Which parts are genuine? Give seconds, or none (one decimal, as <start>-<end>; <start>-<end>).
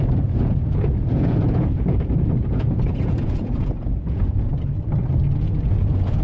4.5-5.4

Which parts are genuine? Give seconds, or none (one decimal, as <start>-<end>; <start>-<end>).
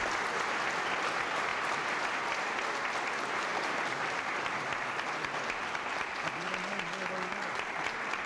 0.0-8.3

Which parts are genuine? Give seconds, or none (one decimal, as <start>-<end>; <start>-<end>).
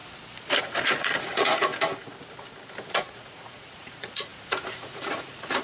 0.0-0.6; 1.7-2.9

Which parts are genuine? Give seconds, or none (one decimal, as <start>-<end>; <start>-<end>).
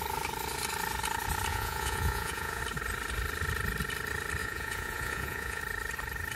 0.0-1.5; 2.6-4.4; 5.6-6.4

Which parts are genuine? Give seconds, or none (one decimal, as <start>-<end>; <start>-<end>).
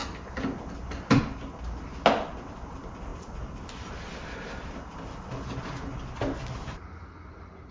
0.0-7.7